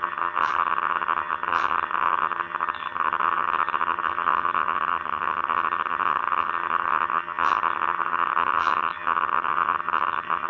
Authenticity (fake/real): fake